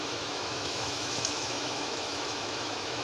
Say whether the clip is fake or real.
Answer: fake